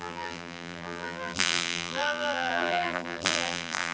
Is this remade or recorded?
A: remade